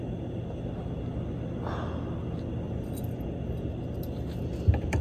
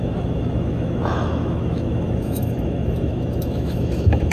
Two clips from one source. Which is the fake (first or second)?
second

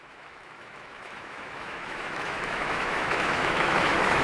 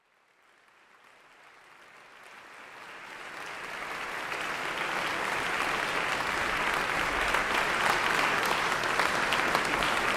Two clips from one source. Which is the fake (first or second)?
first